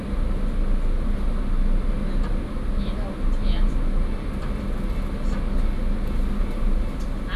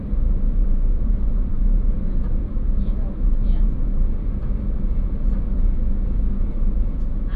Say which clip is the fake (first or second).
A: second